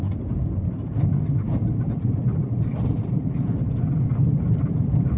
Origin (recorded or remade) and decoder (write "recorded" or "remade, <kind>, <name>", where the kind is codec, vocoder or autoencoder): recorded